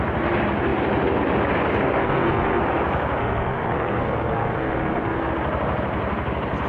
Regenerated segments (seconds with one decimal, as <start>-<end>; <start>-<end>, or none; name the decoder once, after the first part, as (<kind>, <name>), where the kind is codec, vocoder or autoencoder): 2.0-2.6 (codec, SNAC); 3.2-5.3